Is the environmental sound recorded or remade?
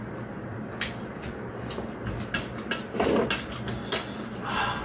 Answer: recorded